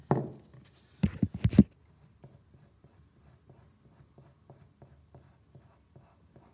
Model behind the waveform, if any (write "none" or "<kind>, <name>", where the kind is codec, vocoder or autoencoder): none